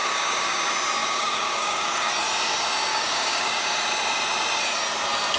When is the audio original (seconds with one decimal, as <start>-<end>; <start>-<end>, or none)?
0.6-1.0; 2.1-2.9; 3.8-5.4